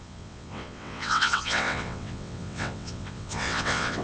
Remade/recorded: remade